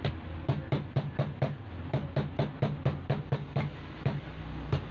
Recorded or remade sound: recorded